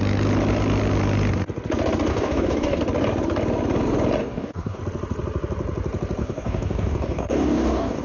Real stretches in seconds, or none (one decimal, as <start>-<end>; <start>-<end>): 0.0-2.1; 2.8-4.2; 4.8-6.2